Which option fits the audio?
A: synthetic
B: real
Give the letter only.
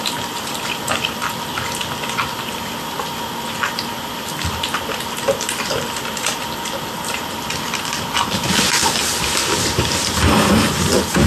B